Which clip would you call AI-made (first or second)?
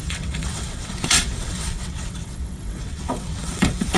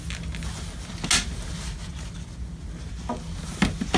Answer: first